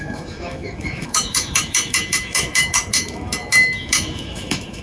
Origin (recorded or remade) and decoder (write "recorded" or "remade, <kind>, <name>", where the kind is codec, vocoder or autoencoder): remade, autoencoder, DAC-VAE